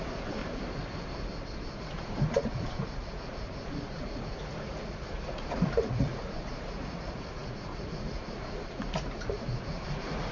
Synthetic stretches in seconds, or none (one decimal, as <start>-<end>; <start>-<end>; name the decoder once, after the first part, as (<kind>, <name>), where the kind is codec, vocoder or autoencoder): 0.0-0.4 (vocoder, Vocos); 1.8-10.3